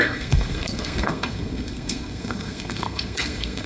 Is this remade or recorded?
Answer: remade